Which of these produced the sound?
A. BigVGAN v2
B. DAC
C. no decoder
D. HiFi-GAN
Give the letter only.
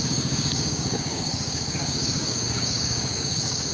B